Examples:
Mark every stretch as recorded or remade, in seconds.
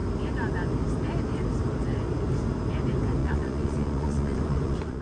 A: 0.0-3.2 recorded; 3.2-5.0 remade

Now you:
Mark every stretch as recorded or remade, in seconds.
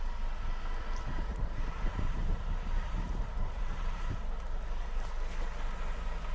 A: 0.0-1.3 recorded; 1.3-4.0 remade; 4.0-6.3 recorded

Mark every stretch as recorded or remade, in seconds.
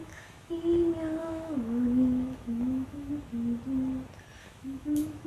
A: 0.0-0.5 remade; 0.5-1.2 recorded; 1.2-3.1 remade; 3.1-4.4 recorded; 4.4-5.3 remade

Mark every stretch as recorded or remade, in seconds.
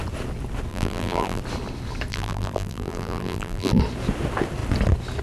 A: 0.0-0.7 recorded; 0.7-1.4 remade; 1.4-2.1 recorded; 2.1-3.8 remade; 3.8-5.2 recorded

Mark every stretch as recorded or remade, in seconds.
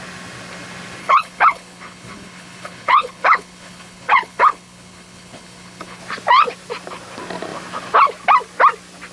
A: 0.0-1.0 recorded; 1.0-6.0 remade; 6.0-9.1 recorded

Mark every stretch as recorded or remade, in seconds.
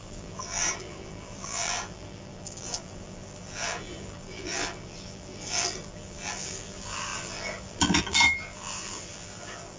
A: 0.0-9.8 remade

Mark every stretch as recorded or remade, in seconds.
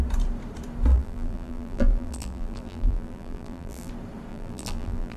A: 0.0-0.9 recorded; 0.9-3.9 remade; 3.9-4.3 recorded; 4.3-5.2 remade